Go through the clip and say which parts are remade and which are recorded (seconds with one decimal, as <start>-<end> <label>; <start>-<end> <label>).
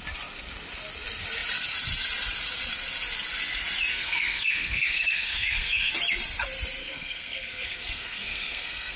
0.0-3.9 recorded; 3.9-5.9 remade; 5.9-6.8 recorded; 6.8-9.0 remade